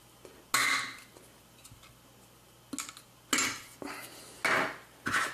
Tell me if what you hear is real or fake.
real